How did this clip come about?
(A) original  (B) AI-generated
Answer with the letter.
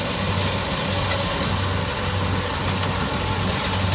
A